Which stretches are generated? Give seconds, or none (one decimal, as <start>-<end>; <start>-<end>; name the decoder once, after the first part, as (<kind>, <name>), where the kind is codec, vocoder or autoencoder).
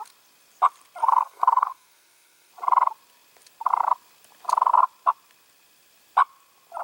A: 1.0-2.5 (codec, SNAC)